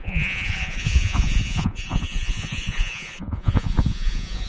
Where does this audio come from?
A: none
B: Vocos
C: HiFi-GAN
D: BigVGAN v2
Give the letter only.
B